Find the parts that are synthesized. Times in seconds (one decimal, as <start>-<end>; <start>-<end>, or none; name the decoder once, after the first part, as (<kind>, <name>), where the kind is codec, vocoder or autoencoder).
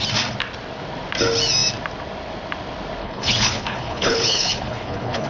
3.0-5.3 (codec, HILCodec)